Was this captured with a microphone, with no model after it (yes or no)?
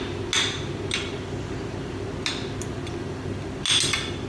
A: yes